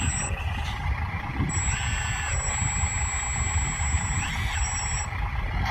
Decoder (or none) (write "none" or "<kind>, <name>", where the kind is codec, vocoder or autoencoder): none